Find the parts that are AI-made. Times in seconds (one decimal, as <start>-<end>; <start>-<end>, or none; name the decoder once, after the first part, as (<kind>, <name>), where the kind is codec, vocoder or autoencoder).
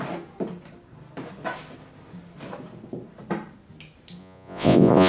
4.2-5.1 (vocoder, Vocos)